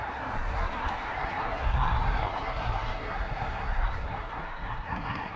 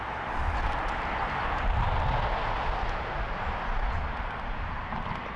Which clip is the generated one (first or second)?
first